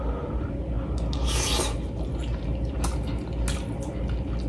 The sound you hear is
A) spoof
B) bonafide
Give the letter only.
B